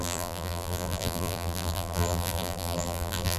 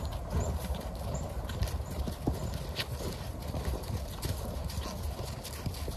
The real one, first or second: second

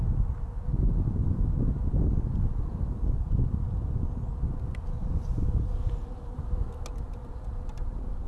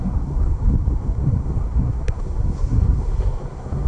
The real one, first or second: first